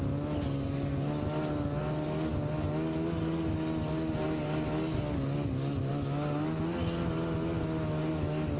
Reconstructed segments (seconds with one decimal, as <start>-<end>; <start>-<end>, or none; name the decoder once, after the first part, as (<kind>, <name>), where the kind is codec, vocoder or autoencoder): none